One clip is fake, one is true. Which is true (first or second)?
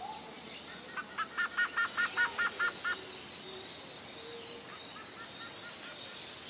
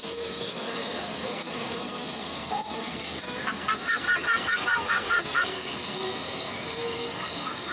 first